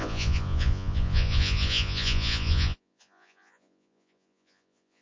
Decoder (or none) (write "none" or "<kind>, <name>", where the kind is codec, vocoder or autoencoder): vocoder, Vocos